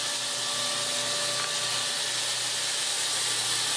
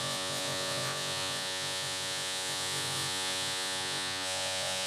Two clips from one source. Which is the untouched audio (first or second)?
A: first